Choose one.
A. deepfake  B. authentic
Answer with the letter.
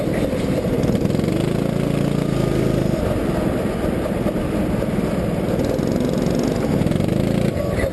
B